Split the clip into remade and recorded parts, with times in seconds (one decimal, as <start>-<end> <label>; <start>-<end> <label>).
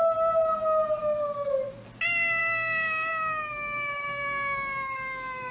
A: 0.0-1.0 recorded; 1.0-1.5 remade; 1.5-2.4 recorded; 2.4-5.5 remade